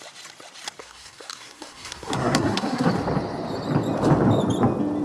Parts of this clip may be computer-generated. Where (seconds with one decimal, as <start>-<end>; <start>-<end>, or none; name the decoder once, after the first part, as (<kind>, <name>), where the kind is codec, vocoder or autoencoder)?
0.8-2.9 (codec, SNAC)